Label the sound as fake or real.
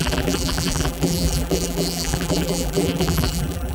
fake